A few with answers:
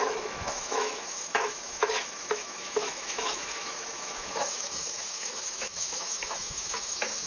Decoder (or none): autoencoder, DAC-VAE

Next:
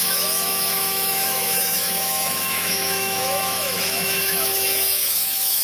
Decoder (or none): autoencoder, DAC-VAE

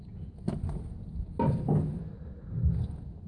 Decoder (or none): none